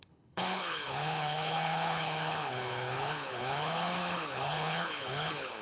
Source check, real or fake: fake